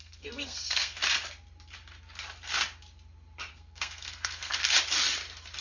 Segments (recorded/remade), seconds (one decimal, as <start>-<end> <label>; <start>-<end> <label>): 0.0-1.0 remade; 1.0-3.5 recorded; 3.5-4.5 remade; 4.5-5.6 recorded